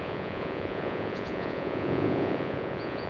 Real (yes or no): no